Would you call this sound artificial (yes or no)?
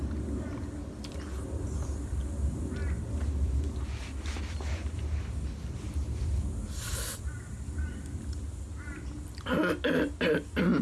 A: no